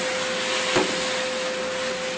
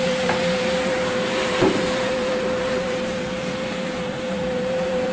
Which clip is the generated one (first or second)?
second